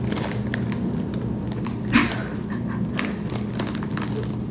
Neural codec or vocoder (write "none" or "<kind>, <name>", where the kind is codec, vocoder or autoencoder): none